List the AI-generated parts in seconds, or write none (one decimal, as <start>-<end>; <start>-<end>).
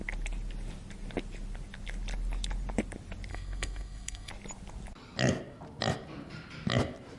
3.3-4.3